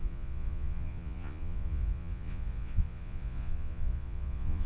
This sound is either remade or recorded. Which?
remade